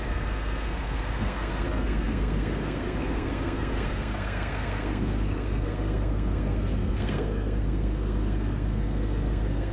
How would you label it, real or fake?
fake